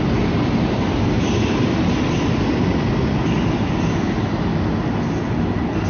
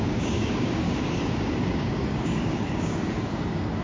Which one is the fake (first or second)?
second